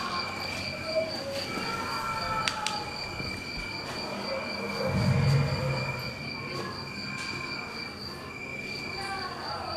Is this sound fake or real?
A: real